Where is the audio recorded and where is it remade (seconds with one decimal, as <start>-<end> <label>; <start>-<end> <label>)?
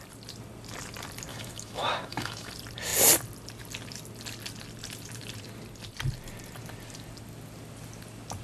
0.0-1.3 recorded; 1.3-2.5 remade; 2.5-8.4 recorded